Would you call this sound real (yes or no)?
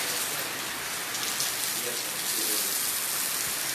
yes